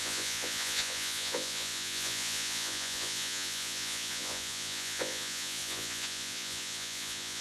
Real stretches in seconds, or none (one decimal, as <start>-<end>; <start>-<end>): none